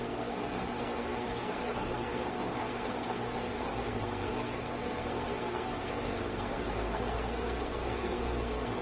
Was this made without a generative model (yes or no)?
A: no